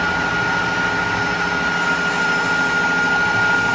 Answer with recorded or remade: recorded